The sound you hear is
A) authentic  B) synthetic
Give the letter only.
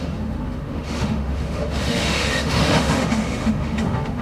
B